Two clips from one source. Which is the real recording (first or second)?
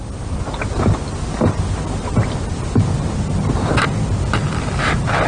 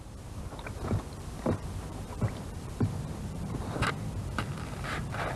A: first